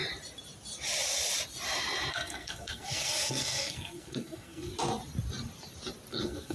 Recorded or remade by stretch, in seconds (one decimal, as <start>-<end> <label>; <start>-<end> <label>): 0.0-2.1 recorded; 2.1-4.7 remade; 4.7-6.1 recorded; 6.1-6.5 remade